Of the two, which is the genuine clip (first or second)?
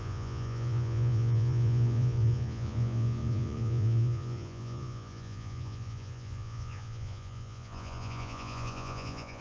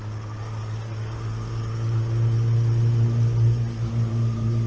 second